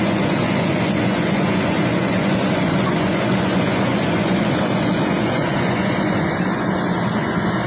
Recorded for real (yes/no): no